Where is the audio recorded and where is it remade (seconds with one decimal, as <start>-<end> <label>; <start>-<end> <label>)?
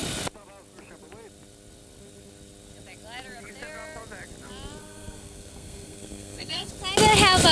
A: 0.0-4.8 recorded; 4.8-6.7 remade; 6.7-7.5 recorded